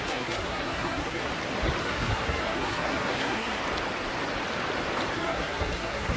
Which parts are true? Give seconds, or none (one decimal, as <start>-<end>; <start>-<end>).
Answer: 1.3-1.8; 3.6-5.1